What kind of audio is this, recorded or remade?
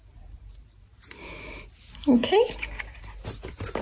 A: remade